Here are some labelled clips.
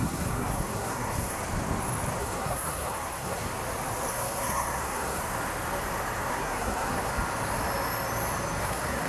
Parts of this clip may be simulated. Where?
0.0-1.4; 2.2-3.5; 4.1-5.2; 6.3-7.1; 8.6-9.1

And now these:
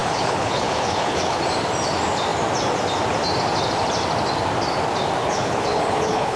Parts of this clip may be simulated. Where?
0.0-1.4; 5.2-6.4